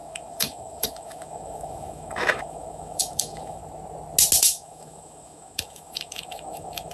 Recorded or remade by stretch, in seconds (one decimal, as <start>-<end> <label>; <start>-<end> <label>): 0.0-3.6 remade; 3.6-4.4 recorded; 4.4-6.9 remade